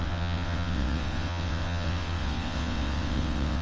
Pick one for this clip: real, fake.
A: fake